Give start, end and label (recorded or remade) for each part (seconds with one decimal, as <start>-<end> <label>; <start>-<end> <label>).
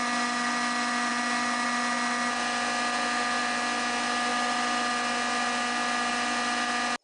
0.0-7.0 recorded